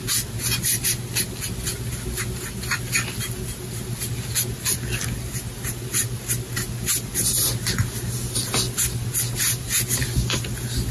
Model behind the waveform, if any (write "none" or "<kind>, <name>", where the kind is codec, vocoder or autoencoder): none